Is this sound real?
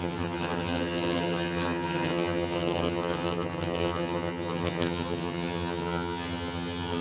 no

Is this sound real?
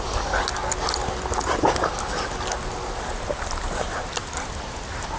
yes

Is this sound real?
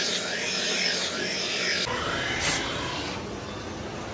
yes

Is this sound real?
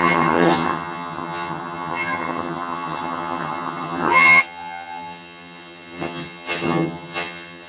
no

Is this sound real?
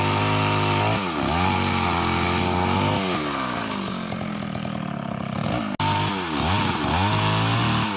yes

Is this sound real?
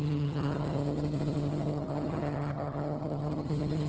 no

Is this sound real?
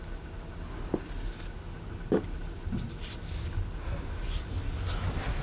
yes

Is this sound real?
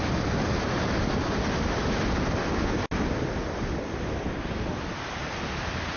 yes